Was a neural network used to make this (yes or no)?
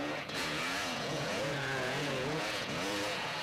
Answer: yes